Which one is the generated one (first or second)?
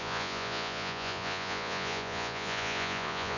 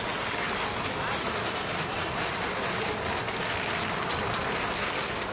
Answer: first